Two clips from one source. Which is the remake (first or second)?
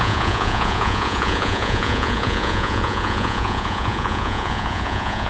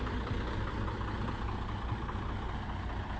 first